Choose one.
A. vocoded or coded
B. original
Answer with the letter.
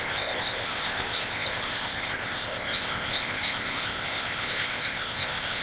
A